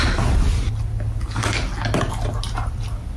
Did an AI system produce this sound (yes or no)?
no